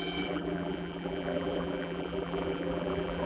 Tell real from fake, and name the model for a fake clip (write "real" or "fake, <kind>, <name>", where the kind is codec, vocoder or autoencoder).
fake, vocoder, BigVGAN v2